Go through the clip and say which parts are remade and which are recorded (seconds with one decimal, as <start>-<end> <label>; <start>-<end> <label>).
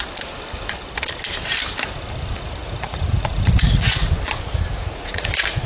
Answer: 0.0-2.6 recorded; 2.6-4.1 remade; 4.1-4.8 recorded; 4.8-5.7 remade